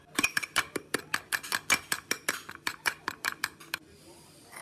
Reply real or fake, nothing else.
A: real